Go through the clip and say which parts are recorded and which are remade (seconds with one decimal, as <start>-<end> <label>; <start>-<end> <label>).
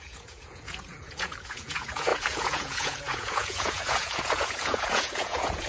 0.0-5.7 remade